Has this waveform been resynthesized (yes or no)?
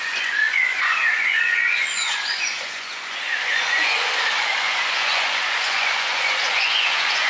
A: yes